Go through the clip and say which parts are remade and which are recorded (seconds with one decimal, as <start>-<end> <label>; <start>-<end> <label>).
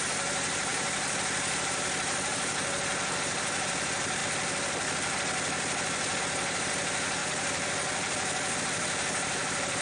0.0-4.2 remade; 4.2-6.2 recorded; 6.2-7.2 remade; 7.2-8.6 recorded; 8.6-9.8 remade